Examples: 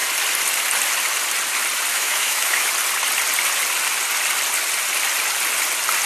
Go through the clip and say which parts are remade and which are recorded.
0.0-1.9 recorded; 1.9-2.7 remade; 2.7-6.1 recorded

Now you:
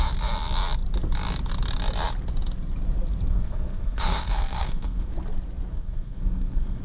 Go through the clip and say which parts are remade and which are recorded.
0.0-3.3 recorded; 3.3-5.1 remade; 5.1-5.7 recorded; 5.7-6.8 remade

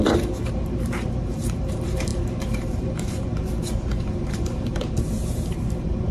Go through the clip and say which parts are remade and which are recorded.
0.0-6.1 remade

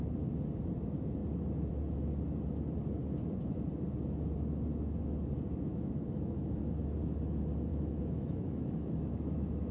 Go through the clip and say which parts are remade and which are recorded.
0.0-5.7 recorded; 5.7-6.6 remade; 6.6-7.7 recorded; 7.7-9.7 remade

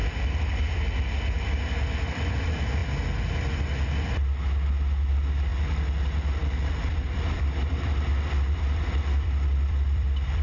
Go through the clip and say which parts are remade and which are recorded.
0.0-2.0 recorded; 2.0-2.8 remade; 2.8-5.1 recorded; 5.1-5.5 remade; 5.5-6.7 recorded; 6.7-10.4 remade